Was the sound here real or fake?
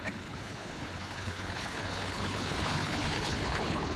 fake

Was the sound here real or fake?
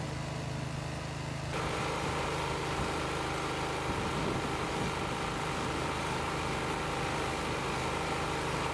real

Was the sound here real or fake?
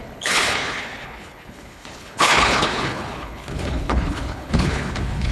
fake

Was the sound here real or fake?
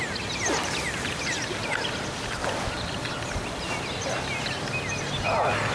real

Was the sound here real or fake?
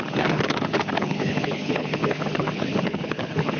fake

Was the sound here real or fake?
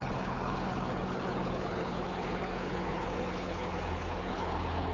fake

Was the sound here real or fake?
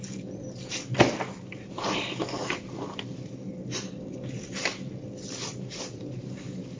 real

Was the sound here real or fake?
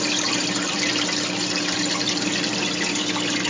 real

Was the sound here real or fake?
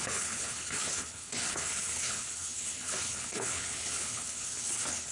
fake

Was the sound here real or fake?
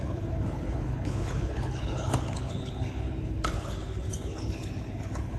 fake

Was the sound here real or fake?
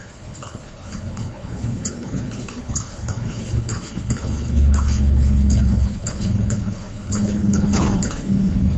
fake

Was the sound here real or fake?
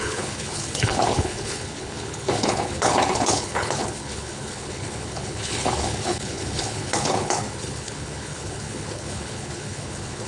fake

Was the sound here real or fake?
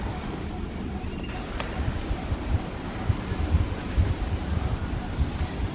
real